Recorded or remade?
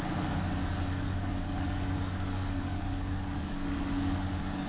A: remade